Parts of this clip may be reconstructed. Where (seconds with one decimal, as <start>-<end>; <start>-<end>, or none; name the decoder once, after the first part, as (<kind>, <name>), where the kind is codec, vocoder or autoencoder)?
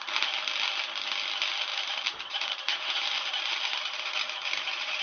1.7-5.0 (vocoder, BigVGAN v2)